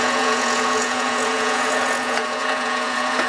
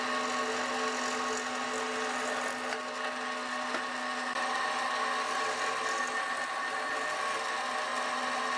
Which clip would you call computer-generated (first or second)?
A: first